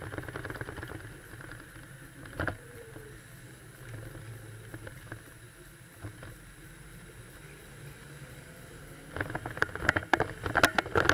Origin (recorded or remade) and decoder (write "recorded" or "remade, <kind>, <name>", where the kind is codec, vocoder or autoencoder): recorded